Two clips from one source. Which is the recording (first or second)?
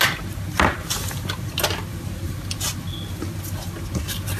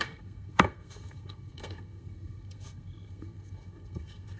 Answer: first